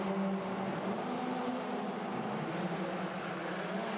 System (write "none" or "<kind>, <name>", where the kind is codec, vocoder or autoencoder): none